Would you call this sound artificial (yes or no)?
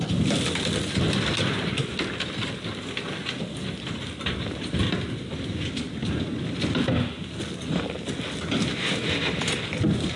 no